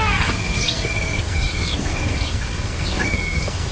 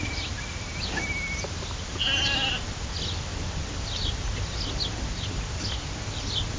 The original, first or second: second